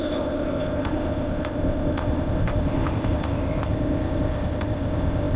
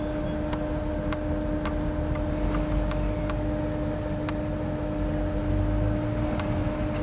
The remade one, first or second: first